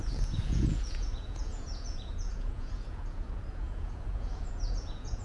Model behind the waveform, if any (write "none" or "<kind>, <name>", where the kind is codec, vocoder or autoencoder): vocoder, Vocos